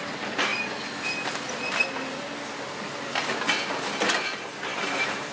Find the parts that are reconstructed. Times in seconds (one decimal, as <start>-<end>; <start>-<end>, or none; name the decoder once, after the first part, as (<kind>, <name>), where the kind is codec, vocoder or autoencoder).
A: 4.7-5.3 (vocoder, BigVGAN v2)